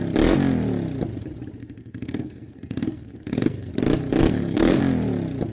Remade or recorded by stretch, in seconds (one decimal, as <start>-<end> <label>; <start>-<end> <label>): 0.0-1.6 recorded; 1.6-3.7 remade; 3.7-4.2 recorded; 4.2-4.8 remade; 4.8-5.5 recorded